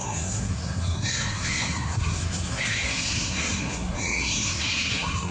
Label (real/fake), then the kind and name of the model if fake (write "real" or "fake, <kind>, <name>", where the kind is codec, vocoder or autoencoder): fake, codec, SNAC